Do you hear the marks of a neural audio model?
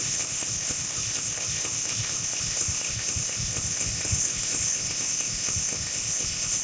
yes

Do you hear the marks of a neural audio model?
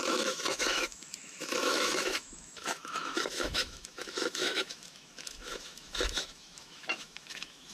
yes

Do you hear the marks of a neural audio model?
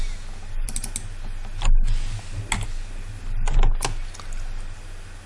no